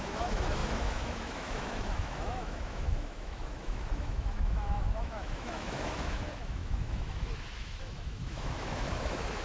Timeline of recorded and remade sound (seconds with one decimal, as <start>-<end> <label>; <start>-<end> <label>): 0.0-9.4 remade